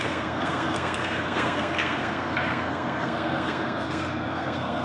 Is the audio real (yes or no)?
no